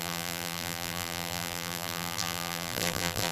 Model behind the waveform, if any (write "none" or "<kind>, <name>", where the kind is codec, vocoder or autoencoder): vocoder, BigVGAN v2